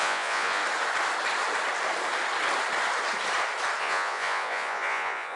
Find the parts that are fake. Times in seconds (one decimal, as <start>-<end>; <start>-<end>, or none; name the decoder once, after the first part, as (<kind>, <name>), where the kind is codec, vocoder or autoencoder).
0.0-0.6 (vocoder, Vocos); 3.8-5.4